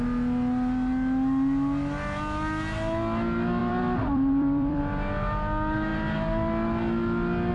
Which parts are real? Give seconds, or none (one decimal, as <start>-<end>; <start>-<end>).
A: 0.0-3.6; 4.8-7.5